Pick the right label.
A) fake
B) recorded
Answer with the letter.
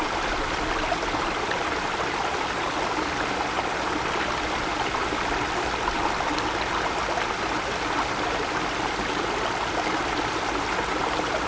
B